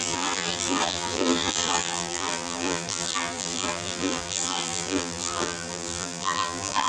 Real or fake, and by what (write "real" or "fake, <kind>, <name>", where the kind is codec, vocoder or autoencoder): fake, vocoder, BigVGAN v2